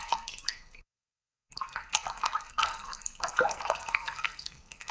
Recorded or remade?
remade